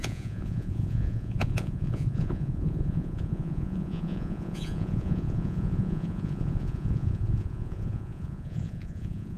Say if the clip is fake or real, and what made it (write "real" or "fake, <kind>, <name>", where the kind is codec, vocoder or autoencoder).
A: fake, vocoder, Vocos